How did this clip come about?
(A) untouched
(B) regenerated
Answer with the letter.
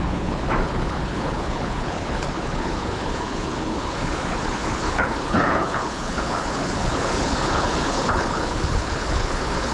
B